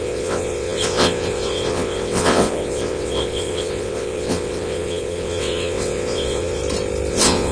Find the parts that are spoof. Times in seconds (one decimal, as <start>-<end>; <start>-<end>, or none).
0.0-6.6; 7.1-7.5